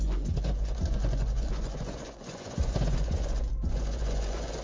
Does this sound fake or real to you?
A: fake